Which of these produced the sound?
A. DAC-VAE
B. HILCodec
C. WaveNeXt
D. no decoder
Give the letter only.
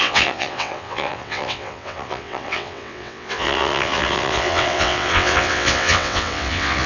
C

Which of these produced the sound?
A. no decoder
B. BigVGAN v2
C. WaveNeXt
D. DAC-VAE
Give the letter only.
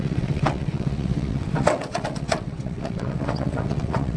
C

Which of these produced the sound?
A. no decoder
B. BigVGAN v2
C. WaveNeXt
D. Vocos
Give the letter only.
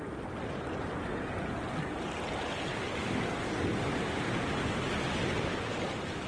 A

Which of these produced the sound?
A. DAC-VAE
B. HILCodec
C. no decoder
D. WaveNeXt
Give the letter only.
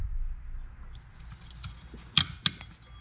C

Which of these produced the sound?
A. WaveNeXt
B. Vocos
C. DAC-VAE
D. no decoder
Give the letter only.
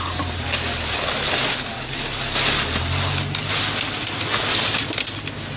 D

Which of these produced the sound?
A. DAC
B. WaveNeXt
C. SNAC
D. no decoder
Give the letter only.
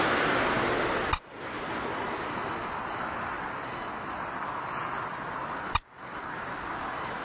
D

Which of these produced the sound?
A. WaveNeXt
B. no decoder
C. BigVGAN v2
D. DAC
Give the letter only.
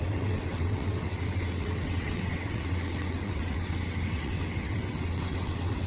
A